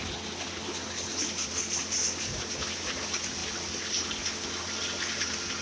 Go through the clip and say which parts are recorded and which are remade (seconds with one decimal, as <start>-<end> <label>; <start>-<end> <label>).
0.0-5.6 recorded